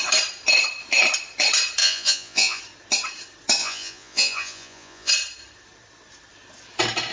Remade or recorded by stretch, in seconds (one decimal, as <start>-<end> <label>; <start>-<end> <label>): 0.0-1.8 recorded; 1.8-2.6 remade; 2.6-3.6 recorded; 3.6-5.1 remade; 5.1-7.1 recorded